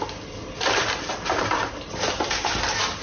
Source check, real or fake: real